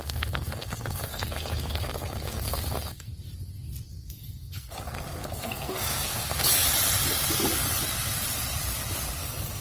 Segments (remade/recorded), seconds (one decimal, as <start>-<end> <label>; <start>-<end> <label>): 0.0-3.1 remade; 3.1-3.9 recorded; 3.9-6.4 remade; 6.4-9.2 recorded; 9.2-9.6 remade

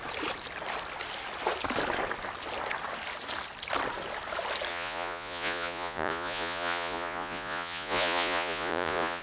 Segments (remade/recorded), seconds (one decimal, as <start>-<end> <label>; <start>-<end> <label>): 0.0-4.7 recorded; 4.7-9.2 remade